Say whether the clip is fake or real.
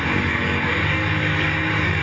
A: fake